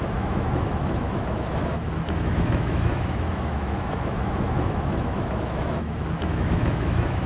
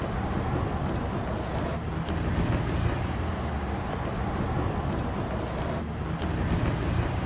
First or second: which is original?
second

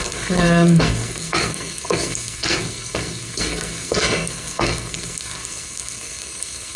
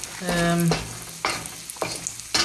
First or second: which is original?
second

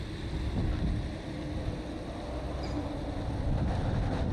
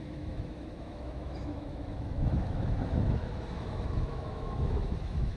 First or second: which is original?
first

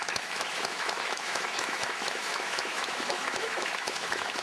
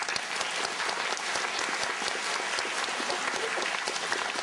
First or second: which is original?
second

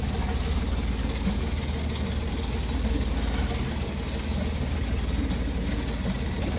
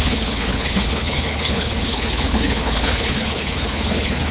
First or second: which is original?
first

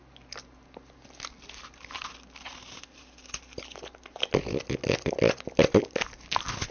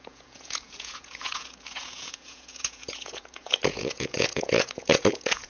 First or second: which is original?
first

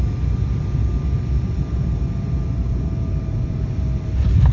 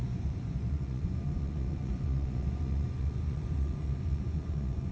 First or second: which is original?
first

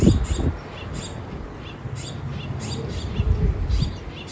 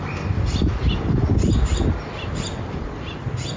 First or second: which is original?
first